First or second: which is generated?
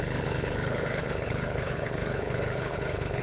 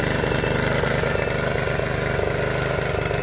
first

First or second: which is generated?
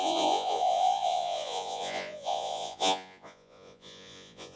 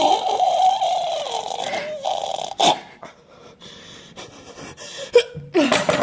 first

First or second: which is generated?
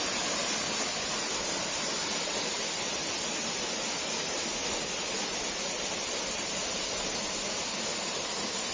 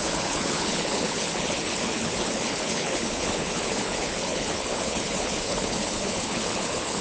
second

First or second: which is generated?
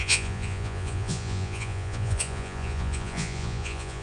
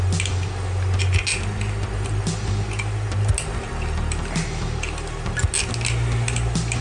first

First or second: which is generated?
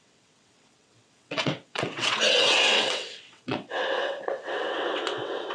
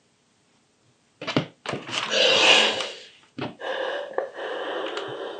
first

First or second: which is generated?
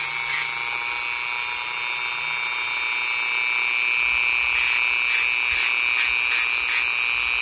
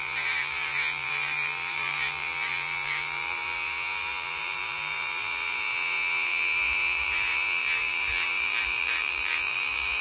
second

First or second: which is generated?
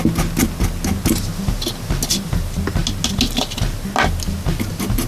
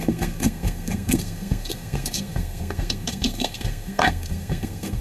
second